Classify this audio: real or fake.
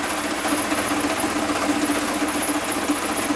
real